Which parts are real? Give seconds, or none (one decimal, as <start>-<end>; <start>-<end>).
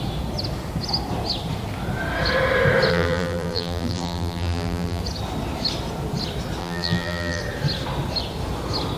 0.0-2.9; 5.0-6.6; 7.4-9.0